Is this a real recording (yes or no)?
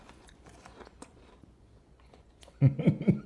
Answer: no